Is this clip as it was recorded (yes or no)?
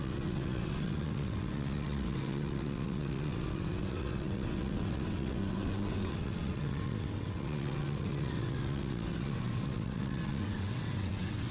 no